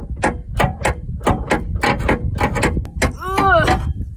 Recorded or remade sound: recorded